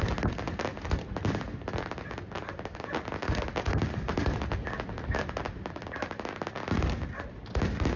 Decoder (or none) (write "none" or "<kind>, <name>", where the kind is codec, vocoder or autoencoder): none